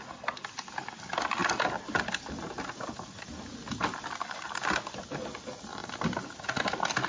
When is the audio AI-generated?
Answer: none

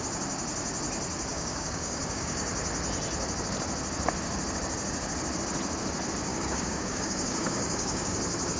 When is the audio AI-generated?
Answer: 1.3-2.5 (codec, DAC); 6.3-8.2

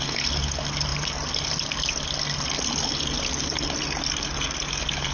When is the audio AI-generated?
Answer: none

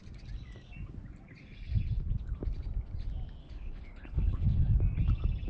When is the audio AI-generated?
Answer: 3.4-4.7 (codec, HILCodec)